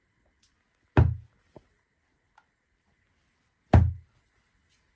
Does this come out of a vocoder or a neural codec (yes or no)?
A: no